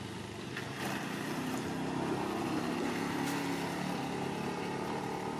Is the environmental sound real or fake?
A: real